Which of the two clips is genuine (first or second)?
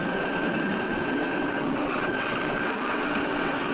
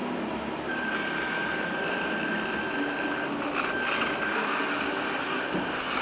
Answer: second